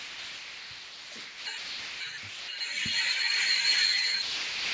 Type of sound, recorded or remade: recorded